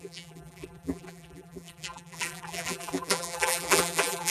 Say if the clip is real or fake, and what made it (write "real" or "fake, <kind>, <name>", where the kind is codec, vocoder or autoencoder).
fake, vocoder, BigVGAN v2